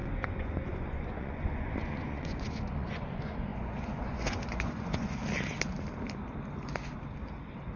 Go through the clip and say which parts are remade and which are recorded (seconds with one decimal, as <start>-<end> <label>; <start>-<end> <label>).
0.0-5.2 remade; 5.2-7.8 recorded